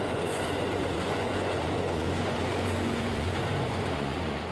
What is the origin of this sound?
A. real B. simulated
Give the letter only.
B